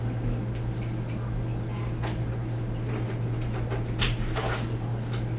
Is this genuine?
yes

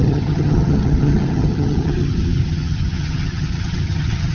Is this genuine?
no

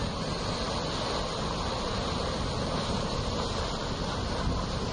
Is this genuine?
yes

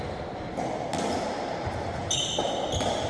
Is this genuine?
yes